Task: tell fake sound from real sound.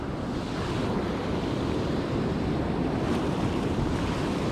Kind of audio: fake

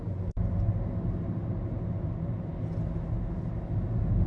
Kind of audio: real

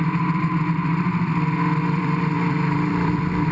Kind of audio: fake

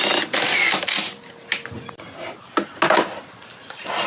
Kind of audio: real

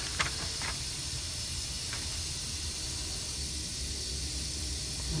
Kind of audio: real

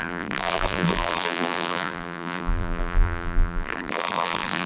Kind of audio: fake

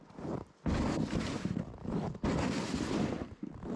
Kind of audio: real